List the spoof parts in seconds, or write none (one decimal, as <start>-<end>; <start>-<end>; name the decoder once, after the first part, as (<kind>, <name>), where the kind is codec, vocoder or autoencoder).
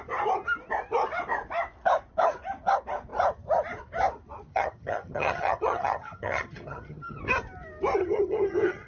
4.5-7.2 (vocoder, HiFi-GAN); 8.0-8.9